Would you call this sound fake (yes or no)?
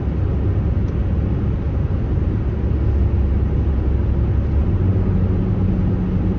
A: no